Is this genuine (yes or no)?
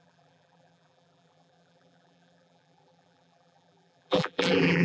no